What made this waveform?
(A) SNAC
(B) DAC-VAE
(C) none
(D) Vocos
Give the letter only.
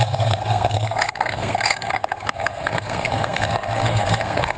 A